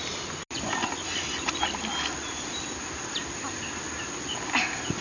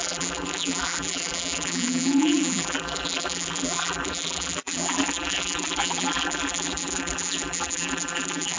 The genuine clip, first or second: first